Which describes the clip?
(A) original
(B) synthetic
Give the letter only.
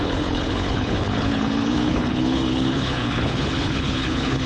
B